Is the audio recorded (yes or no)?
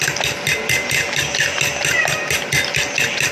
yes